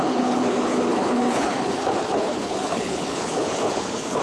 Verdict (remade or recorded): remade